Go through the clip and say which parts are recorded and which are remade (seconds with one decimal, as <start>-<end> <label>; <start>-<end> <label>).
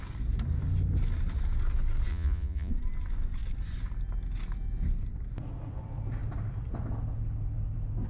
0.0-2.1 recorded; 2.1-2.7 remade; 2.7-8.1 recorded